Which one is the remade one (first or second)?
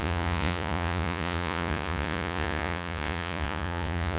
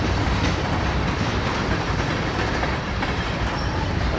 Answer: first